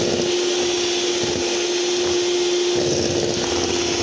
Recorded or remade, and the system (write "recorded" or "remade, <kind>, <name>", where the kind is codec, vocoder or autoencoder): recorded